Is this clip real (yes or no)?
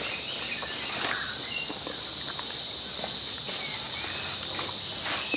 yes